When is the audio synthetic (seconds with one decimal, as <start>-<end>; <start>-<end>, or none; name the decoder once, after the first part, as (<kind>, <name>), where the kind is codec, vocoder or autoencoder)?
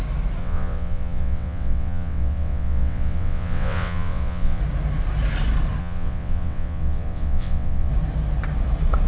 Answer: 0.4-4.6 (vocoder, WaveNeXt); 5.8-7.9